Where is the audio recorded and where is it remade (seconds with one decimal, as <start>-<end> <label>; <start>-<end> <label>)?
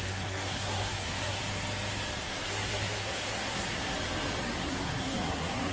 0.0-1.4 remade; 1.4-2.3 recorded; 2.3-3.8 remade; 3.8-4.4 recorded; 4.4-5.7 remade